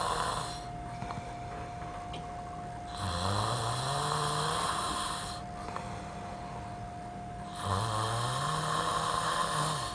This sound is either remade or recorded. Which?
recorded